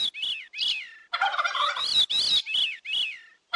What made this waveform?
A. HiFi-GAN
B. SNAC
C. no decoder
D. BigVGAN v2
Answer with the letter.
C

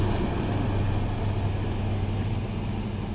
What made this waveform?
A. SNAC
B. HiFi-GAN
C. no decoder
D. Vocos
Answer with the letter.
C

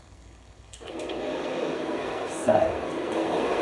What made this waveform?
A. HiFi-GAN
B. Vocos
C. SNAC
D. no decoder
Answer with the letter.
C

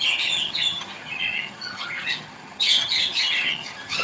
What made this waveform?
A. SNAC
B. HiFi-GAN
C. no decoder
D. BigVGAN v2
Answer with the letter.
B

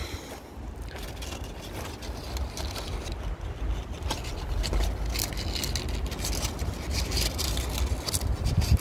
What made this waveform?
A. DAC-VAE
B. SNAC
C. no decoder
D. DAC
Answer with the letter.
C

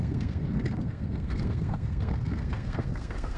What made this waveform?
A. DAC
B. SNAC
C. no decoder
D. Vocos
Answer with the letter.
B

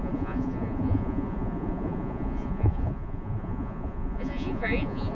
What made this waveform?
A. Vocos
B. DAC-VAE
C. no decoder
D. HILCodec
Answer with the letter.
A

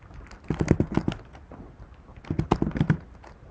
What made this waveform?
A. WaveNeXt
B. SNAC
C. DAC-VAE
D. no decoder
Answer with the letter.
D